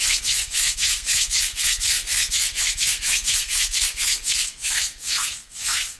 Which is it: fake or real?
fake